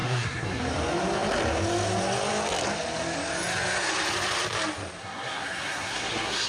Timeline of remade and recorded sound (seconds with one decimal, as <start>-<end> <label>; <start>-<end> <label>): 0.0-0.6 remade; 0.6-5.0 recorded; 5.0-6.5 remade